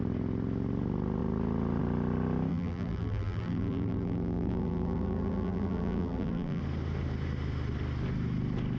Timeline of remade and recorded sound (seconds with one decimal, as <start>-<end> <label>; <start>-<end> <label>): 0.0-2.5 recorded; 2.5-6.6 remade; 6.6-8.8 recorded

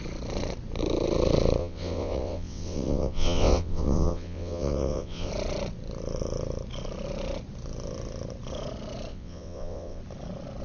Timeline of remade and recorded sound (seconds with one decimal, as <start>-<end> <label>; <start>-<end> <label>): 0.0-1.6 recorded; 1.6-5.3 remade; 5.3-9.1 recorded; 9.1-10.0 remade; 10.0-10.6 recorded

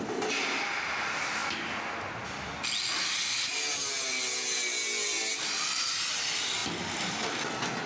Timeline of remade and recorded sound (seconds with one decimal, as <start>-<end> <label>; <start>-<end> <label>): 0.0-7.9 recorded